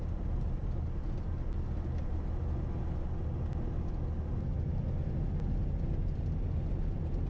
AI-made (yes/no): no